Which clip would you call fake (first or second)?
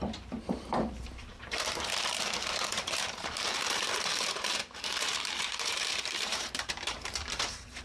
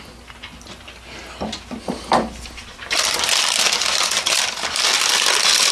first